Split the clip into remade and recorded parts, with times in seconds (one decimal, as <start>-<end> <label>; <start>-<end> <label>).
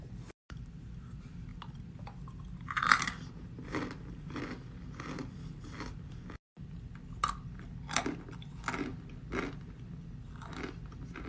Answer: 0.0-11.3 recorded